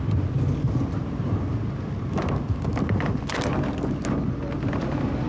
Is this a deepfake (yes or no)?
no